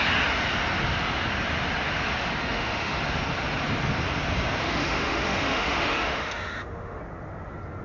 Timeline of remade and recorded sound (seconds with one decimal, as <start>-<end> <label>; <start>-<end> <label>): 0.0-2.4 recorded; 2.4-3.0 remade; 3.0-4.6 recorded; 4.6-7.0 remade; 7.0-7.8 recorded